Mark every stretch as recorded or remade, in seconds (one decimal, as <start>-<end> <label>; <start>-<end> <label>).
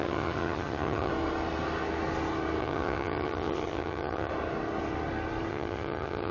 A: 0.0-1.1 remade; 1.1-2.6 recorded; 2.6-4.3 remade; 4.3-5.5 recorded; 5.5-6.3 remade